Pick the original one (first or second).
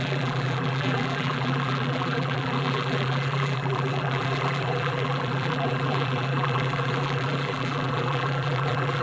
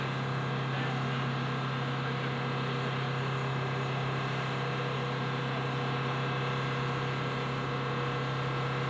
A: second